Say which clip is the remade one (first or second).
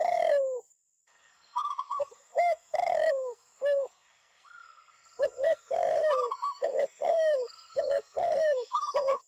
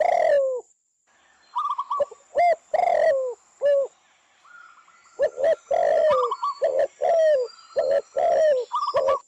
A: first